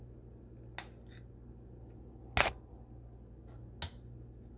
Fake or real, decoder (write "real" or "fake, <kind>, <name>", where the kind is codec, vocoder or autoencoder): real